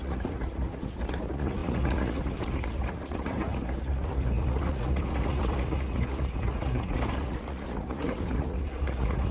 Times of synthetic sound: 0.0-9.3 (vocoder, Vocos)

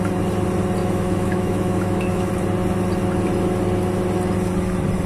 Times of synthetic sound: 0.8-2.3 (autoencoder, DAC-VAE)

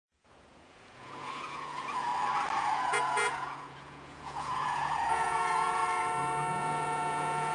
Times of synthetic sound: 0.0-2.1 (vocoder, Vocos); 2.6-5.8; 6.5-7.5

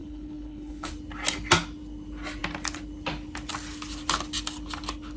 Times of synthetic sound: 0.0-0.9 (codec, HILCodec)

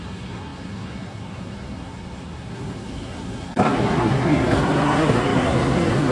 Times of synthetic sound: 0.0-6.1 (codec, SNAC)